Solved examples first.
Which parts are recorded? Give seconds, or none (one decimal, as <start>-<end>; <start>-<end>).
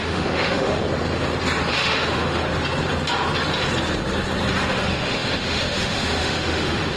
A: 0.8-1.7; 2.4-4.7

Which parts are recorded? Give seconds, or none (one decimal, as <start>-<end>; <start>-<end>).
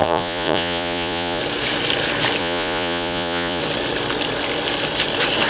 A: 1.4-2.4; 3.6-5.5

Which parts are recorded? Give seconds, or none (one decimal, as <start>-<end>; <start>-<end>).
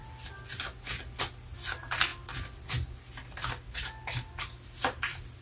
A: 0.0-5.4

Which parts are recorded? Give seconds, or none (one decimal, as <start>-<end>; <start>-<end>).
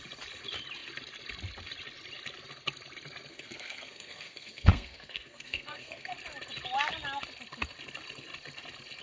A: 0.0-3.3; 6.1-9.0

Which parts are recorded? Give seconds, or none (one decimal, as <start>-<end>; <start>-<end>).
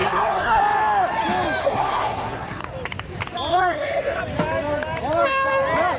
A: 0.6-1.6; 2.6-3.5; 4.2-6.0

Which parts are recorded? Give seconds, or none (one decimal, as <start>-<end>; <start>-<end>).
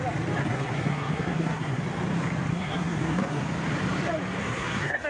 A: 0.0-0.4; 1.8-2.5; 3.4-4.4